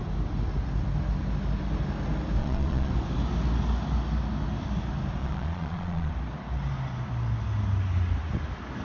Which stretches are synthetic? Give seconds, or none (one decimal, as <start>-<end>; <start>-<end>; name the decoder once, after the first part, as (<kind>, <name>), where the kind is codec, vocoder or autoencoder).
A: 2.4-2.9 (vocoder, Vocos); 5.2-6.1